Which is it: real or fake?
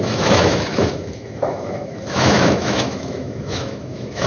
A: fake